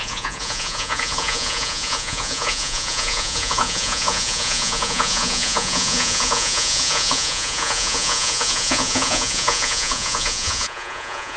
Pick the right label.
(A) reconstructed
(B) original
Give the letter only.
A